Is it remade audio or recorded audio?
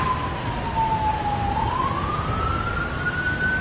recorded